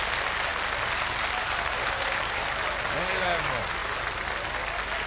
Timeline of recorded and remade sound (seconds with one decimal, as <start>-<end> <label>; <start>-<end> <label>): 0.0-5.1 recorded